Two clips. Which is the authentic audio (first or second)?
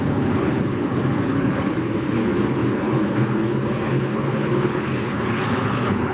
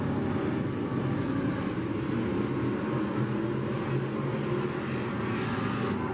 second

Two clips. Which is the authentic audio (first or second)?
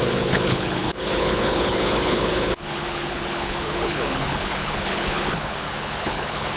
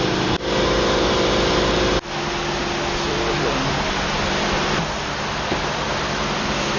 second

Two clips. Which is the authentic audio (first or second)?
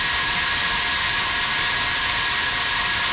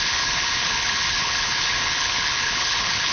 first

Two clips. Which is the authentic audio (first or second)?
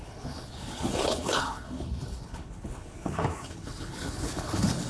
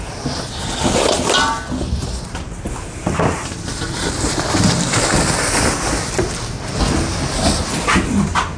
second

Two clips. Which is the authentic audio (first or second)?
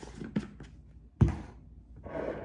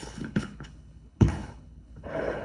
first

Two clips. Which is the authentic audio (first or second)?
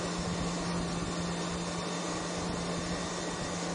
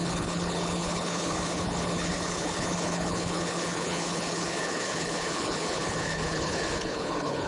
first